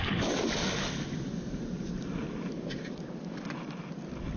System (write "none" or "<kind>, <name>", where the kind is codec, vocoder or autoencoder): none